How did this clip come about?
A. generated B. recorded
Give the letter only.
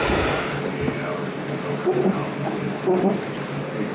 B